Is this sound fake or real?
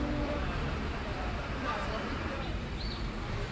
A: fake